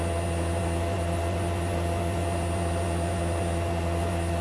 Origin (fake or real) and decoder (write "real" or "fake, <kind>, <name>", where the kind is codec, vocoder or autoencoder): real